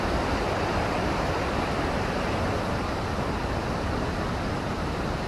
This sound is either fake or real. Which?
real